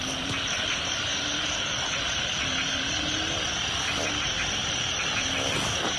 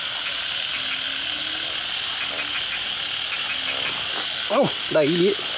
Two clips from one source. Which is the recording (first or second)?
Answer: second